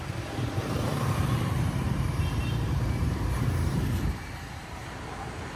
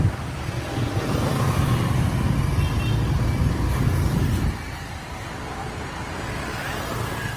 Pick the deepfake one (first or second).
first